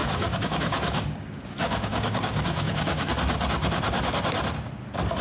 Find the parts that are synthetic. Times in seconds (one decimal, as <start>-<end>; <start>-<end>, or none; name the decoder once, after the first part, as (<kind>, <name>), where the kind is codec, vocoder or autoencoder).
0.0-3.1 (codec, DAC)